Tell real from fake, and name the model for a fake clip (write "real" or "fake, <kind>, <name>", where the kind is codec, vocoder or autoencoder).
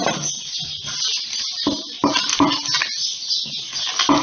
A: real